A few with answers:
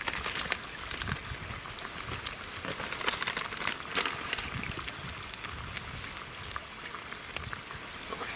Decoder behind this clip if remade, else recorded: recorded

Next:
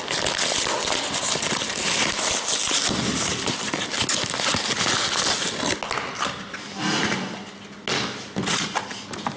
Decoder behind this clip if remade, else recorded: recorded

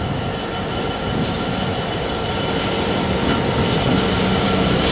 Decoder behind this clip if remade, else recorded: recorded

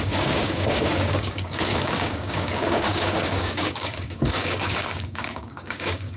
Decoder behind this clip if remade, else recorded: remade, codec, DAC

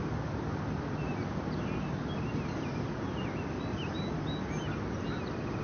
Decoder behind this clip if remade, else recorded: recorded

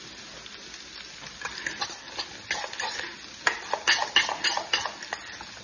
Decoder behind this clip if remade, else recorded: recorded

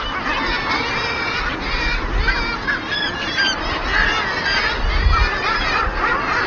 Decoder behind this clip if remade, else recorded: recorded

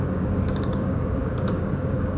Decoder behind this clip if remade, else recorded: remade, codec, DAC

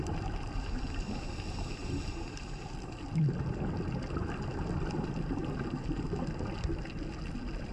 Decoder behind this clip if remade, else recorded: recorded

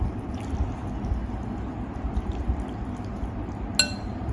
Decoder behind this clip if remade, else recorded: recorded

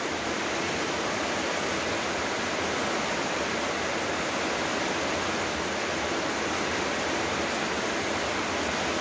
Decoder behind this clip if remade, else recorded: recorded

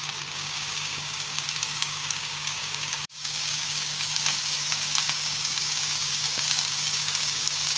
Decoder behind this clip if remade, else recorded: remade, codec, DAC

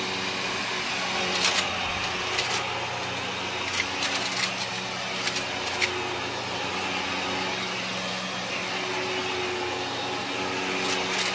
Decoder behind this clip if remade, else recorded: recorded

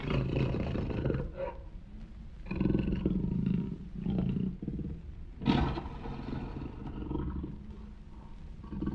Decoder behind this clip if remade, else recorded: recorded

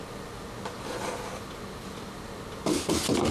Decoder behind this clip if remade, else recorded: recorded